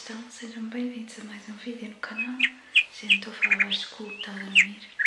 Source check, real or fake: real